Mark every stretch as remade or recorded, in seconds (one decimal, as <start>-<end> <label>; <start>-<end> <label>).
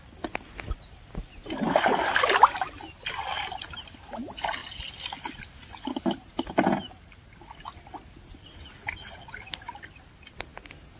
0.0-11.0 recorded